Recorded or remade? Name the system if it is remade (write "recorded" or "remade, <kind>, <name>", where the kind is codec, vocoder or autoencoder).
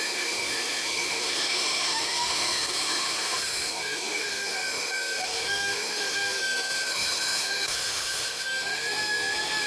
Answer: remade, autoencoder, DAC-VAE